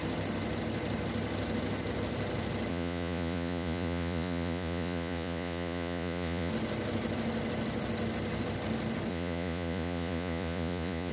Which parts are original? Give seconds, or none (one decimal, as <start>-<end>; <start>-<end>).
0.0-2.7; 6.5-9.1